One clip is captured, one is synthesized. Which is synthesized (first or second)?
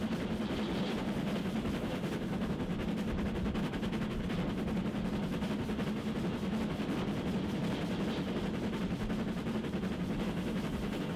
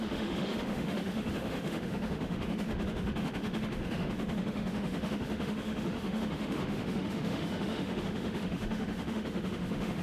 second